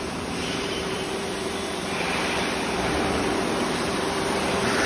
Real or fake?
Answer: fake